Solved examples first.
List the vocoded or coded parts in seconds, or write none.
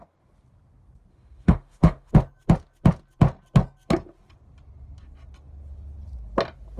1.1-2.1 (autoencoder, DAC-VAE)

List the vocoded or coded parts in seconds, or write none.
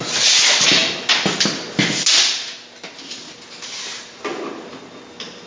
none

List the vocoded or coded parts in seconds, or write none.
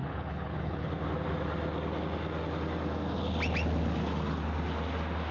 0.0-0.9 (codec, HILCodec)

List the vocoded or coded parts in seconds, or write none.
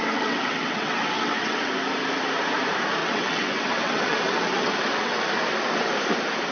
0.0-1.7 (vocoder, WaveNeXt); 3.0-5.2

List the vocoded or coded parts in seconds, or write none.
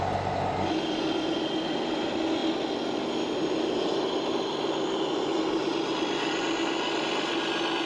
none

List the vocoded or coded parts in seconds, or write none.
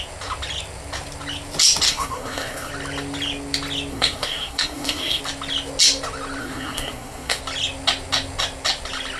1.9-2.7 (codec, SNAC); 3.9-5.2; 6.4-7.4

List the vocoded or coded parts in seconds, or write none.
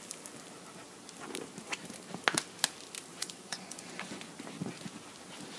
3.1-4.2 (vocoder, Vocos)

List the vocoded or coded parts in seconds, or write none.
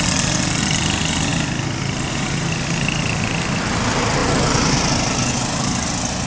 none